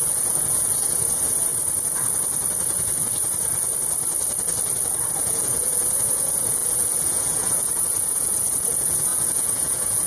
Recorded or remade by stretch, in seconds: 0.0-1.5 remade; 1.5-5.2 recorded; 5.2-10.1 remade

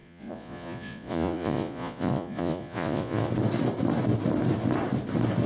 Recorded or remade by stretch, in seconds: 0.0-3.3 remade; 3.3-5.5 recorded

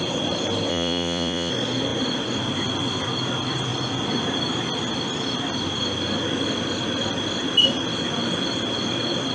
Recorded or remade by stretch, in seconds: 0.0-0.7 recorded; 0.7-1.5 remade; 1.5-9.3 recorded

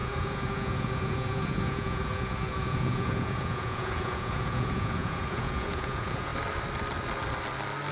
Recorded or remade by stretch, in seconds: 0.0-6.3 remade; 6.3-7.9 recorded

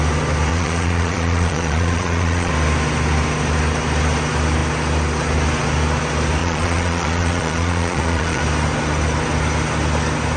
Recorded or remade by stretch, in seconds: 0.0-0.5 recorded; 0.5-2.5 remade; 2.5-6.4 recorded; 6.4-8.4 remade; 8.4-10.4 recorded

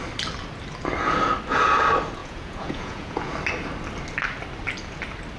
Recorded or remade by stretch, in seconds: 0.0-2.2 recorded; 2.2-3.3 remade; 3.3-5.4 recorded